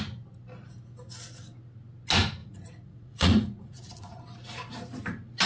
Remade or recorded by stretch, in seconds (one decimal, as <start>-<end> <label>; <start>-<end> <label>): 0.0-2.4 recorded; 2.4-4.2 remade; 4.2-5.5 recorded

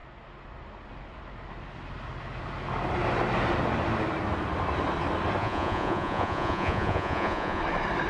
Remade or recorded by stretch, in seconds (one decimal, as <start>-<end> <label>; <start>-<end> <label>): 0.0-5.4 recorded; 5.4-7.6 remade; 7.6-8.1 recorded